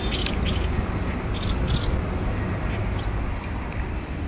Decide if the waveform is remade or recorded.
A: recorded